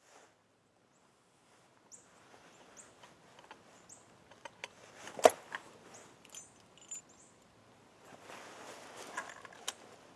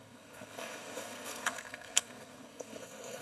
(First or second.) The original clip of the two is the first